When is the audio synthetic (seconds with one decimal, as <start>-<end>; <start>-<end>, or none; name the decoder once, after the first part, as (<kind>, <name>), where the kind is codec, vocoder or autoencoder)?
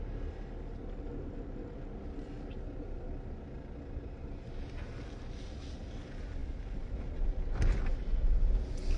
6.4-6.9 (vocoder, BigVGAN v2)